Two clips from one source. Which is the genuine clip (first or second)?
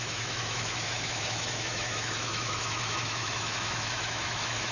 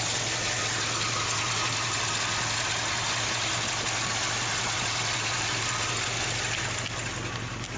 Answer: second